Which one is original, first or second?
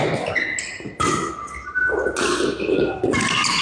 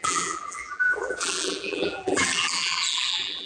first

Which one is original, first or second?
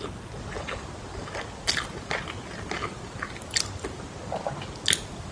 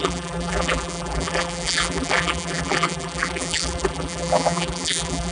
first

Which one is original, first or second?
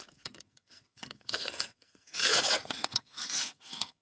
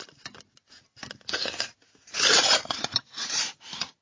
second